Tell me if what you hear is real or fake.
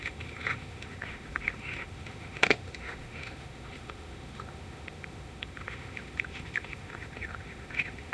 fake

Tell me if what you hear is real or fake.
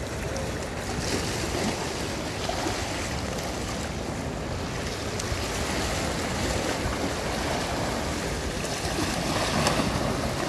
real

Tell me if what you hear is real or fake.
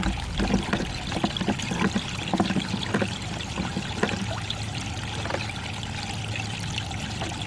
real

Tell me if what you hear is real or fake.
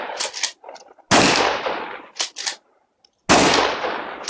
real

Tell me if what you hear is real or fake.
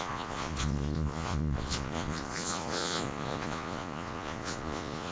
fake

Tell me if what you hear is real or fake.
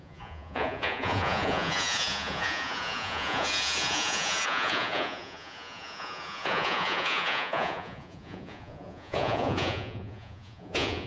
fake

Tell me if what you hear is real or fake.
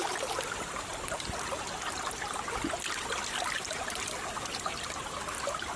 real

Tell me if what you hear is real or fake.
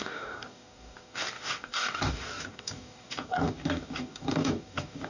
fake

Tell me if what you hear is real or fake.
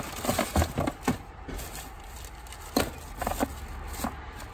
real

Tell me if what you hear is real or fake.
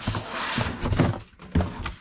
real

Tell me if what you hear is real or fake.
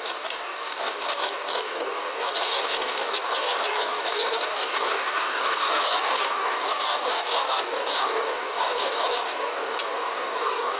fake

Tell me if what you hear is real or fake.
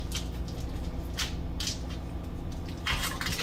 real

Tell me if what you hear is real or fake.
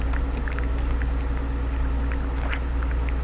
real